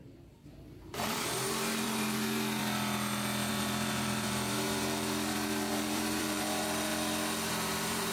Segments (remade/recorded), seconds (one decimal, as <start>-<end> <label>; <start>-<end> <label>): 0.0-2.6 remade; 2.6-3.5 recorded; 3.5-6.9 remade; 6.9-7.5 recorded; 7.5-8.1 remade